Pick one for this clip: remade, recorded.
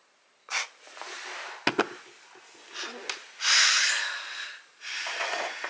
recorded